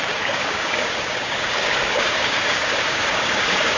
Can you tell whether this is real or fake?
fake